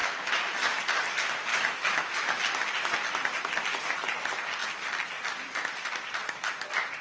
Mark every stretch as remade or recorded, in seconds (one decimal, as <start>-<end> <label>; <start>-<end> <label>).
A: 0.0-0.8 remade; 0.8-1.5 recorded; 1.5-2.4 remade; 2.4-7.0 recorded